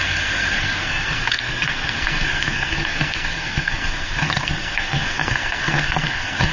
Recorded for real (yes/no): no